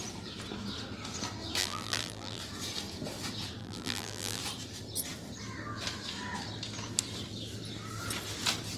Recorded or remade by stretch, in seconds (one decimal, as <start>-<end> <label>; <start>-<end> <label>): 0.0-1.6 recorded; 1.6-2.4 remade; 2.4-3.6 recorded; 3.6-4.4 remade; 4.4-8.8 recorded